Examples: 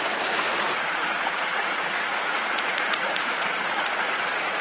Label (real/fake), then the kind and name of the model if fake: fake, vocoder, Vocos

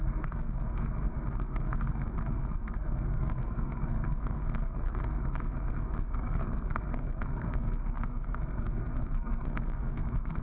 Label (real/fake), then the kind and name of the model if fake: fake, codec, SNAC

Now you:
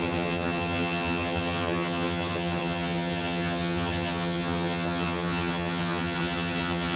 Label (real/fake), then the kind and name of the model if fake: fake, vocoder, HiFi-GAN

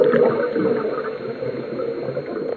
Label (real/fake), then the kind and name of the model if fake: real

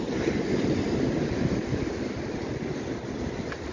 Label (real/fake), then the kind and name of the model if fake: real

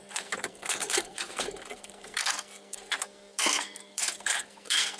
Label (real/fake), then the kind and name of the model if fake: fake, codec, SNAC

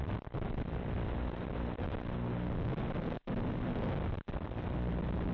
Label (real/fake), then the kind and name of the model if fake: real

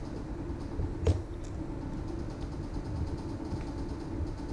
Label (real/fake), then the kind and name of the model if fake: real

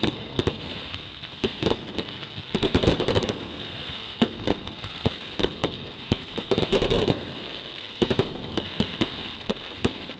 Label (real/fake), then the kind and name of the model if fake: fake, codec, SNAC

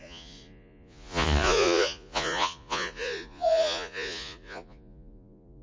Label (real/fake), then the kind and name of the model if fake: fake, vocoder, Vocos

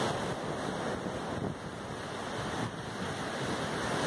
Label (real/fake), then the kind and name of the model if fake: real